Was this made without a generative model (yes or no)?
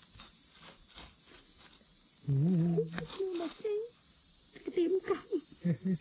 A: yes